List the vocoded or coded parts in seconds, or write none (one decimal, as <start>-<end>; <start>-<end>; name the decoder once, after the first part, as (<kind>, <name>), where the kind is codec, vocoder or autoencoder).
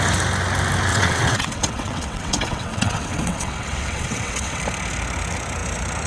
0.9-4.6 (vocoder, WaveNeXt)